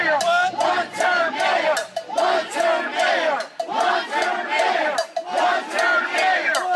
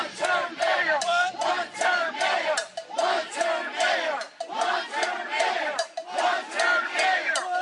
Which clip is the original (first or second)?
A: first